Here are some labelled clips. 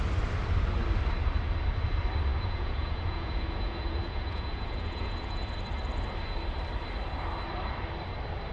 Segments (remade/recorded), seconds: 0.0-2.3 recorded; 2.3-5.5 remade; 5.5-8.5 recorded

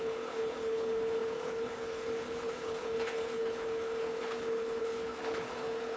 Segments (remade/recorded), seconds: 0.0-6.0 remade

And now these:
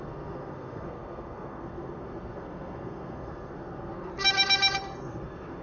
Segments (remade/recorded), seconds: 0.0-4.1 remade; 4.1-5.0 recorded; 5.0-5.6 remade

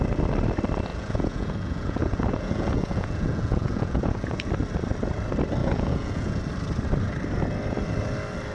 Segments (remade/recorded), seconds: 0.0-0.9 recorded; 0.9-4.5 remade; 4.5-5.6 recorded; 5.6-6.4 remade; 6.4-8.5 recorded

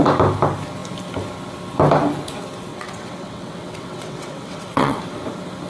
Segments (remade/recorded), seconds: 0.0-2.7 recorded; 2.7-5.0 remade; 5.0-5.7 recorded

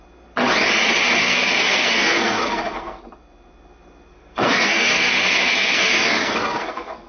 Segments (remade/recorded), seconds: 0.0-1.2 recorded; 1.2-3.0 remade; 3.0-4.1 recorded; 4.1-7.1 remade

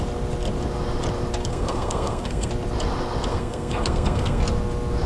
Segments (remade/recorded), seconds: 0.0-1.5 recorded; 1.5-2.5 remade; 2.5-3.3 recorded; 3.3-4.4 remade; 4.4-5.1 recorded

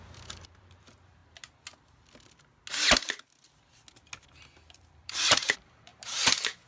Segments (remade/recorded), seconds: 0.0-1.2 remade; 1.2-4.2 recorded; 4.2-6.7 remade